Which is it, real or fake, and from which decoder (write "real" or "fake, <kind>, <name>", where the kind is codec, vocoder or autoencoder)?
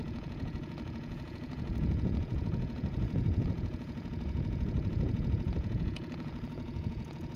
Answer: fake, vocoder, Vocos